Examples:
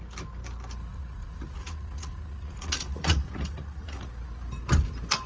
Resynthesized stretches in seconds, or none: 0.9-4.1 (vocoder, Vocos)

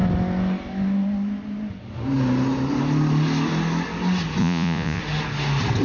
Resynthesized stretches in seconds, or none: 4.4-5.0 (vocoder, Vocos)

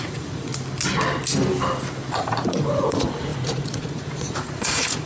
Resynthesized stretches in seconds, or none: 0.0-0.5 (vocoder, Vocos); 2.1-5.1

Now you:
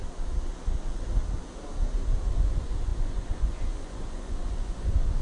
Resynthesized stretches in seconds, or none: 2.3-5.2 (vocoder, Vocos)

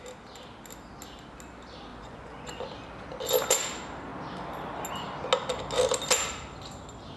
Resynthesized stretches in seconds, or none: 1.9-2.7 (vocoder, Vocos)

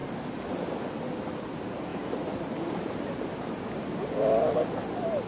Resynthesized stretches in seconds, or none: none

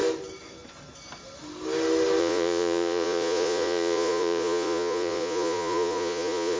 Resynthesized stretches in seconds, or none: 2.2-6.6 (vocoder, Vocos)

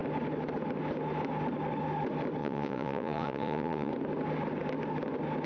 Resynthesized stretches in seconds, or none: 2.4-3.9 (vocoder, Vocos)